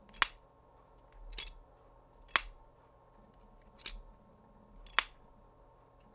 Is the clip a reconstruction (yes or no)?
no